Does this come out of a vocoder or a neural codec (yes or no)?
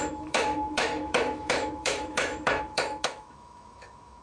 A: yes